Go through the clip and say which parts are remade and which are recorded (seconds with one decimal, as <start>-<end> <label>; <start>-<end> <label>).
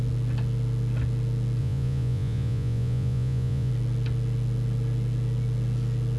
0.0-1.6 recorded; 1.6-3.7 remade; 3.7-6.2 recorded